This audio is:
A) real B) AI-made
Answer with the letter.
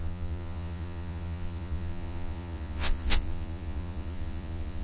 B